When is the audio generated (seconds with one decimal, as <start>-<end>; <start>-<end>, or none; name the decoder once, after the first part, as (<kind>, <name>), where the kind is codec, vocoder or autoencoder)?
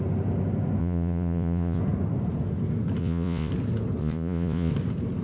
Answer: 0.8-1.8 (vocoder, Vocos); 3.0-3.5; 4.0-4.7